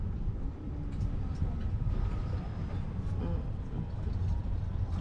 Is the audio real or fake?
real